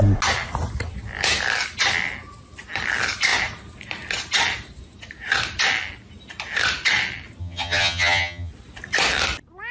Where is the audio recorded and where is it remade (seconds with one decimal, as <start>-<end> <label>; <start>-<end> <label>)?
0.0-7.4 recorded; 7.4-8.5 remade; 8.5-9.7 recorded